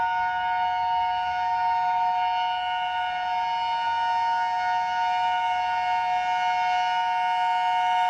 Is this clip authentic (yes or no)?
yes